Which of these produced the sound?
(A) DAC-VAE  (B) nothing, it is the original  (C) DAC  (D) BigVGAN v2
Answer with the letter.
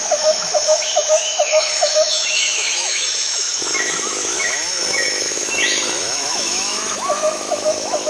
A